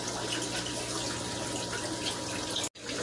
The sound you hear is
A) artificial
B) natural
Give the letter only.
B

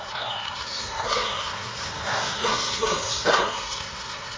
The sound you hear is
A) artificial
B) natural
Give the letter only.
A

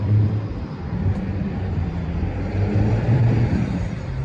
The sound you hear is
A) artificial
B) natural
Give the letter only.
A